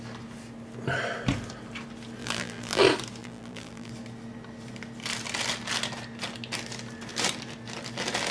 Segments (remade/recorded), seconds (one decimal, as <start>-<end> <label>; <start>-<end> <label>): 0.0-2.2 recorded; 2.2-2.8 remade; 2.8-3.2 recorded; 3.2-3.9 remade; 3.9-8.3 recorded